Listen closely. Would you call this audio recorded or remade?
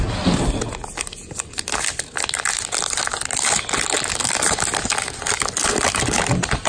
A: recorded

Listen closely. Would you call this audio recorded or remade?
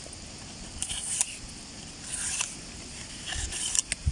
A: recorded